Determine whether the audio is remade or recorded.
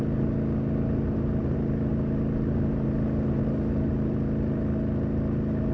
recorded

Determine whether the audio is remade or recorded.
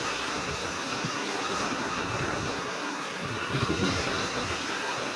remade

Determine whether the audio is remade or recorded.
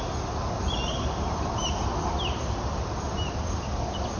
recorded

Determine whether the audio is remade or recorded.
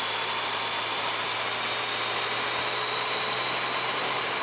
recorded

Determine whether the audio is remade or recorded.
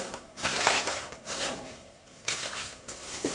remade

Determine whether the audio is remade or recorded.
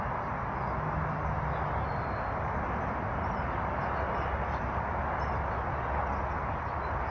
recorded